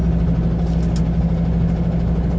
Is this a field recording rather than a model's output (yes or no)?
yes